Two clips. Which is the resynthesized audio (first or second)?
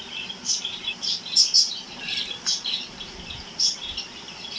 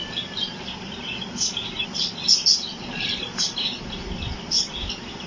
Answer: first